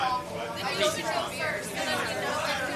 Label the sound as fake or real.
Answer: real